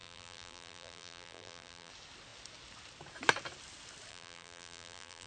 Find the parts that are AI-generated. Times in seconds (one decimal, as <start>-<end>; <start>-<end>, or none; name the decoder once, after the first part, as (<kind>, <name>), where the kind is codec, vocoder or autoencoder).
0.0-1.9 (vocoder, BigVGAN v2); 4.1-5.3